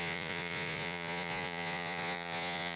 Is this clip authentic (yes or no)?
no